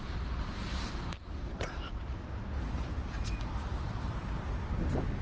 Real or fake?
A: fake